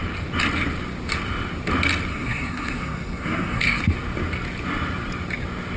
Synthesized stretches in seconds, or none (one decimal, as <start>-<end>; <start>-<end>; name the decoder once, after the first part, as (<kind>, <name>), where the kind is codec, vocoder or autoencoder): 2.1-3.8 (codec, SNAC)

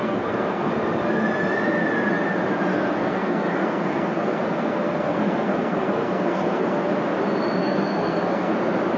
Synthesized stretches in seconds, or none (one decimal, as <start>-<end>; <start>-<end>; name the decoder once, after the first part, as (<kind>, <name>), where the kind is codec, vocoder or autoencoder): 0.0-0.7 (codec, SNAC); 2.7-6.9; 7.6-8.5

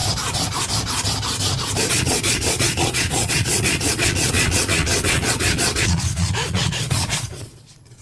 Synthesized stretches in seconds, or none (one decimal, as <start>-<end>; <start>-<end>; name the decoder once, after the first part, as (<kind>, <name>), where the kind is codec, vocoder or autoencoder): 1.9-8.0 (vocoder, Vocos)

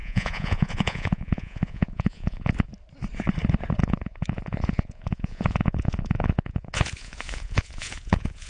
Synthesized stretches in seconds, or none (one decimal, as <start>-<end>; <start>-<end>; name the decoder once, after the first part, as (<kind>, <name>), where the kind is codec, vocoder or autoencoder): 0.0-2.7 (vocoder, Vocos); 3.8-8.5

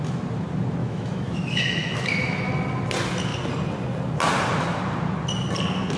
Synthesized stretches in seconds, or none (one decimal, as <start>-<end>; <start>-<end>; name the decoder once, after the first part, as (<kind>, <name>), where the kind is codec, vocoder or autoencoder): 0.8-2.5 (autoencoder, DAC-VAE)

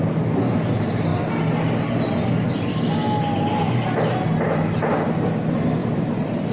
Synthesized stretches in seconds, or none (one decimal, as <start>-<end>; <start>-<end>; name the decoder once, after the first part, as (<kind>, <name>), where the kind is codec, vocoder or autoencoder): none